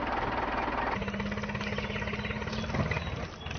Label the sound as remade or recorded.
recorded